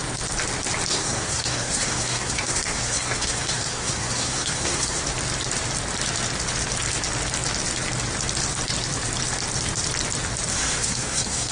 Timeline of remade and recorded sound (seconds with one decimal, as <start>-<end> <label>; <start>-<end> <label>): 0.0-0.9 recorded; 0.9-5.0 remade; 5.0-10.5 recorded; 10.5-11.5 remade